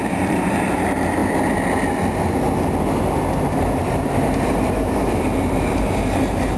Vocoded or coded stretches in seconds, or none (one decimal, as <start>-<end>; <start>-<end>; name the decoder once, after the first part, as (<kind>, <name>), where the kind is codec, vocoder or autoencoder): 0.0-1.2 (vocoder, BigVGAN v2); 3.4-6.6